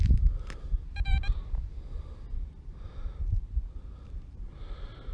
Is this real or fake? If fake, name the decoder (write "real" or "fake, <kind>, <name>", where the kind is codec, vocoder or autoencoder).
real